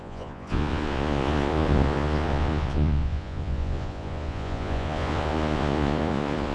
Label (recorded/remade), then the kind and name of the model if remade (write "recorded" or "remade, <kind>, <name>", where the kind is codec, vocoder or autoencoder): remade, vocoder, Vocos